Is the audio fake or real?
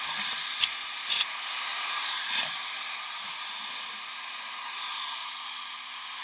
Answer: real